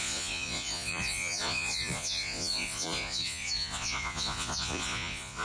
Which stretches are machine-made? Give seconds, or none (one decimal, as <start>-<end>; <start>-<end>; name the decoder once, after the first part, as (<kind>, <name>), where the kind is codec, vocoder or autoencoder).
0.0-5.4 (vocoder, Vocos)